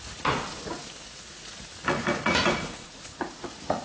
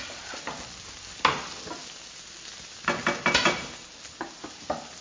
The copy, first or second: first